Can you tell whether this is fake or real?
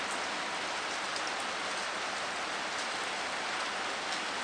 real